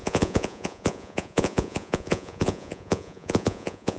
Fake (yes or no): yes